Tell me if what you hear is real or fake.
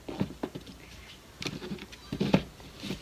real